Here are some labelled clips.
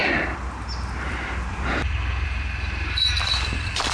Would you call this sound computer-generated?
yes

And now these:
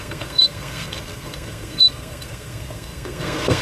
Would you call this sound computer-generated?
yes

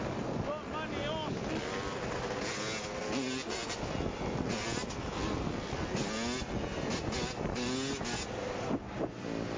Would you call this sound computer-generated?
no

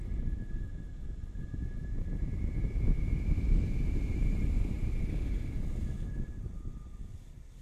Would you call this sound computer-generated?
no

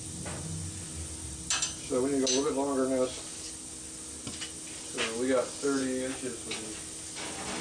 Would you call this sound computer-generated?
no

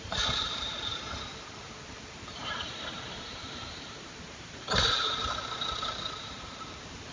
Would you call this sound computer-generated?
yes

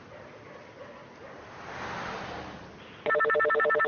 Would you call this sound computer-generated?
no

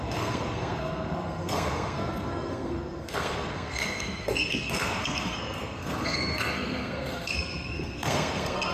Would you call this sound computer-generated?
yes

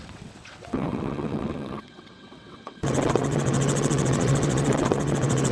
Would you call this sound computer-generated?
yes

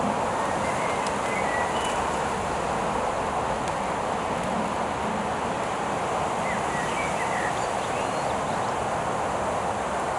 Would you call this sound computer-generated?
no